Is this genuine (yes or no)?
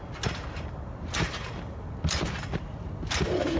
yes